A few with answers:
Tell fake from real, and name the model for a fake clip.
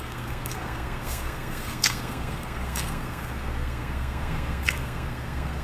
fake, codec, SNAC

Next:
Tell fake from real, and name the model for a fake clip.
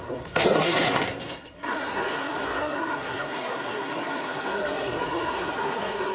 fake, codec, SNAC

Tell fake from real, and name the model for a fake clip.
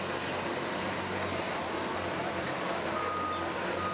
real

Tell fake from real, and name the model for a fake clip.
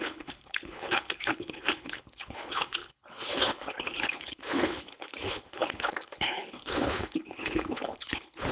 fake, codec, HILCodec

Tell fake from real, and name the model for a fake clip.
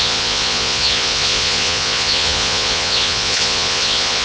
fake, vocoder, Vocos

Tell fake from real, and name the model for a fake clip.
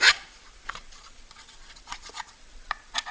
fake, vocoder, Vocos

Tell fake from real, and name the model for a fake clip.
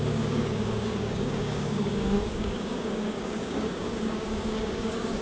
fake, codec, DAC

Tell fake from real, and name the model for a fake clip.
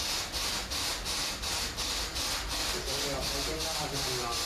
real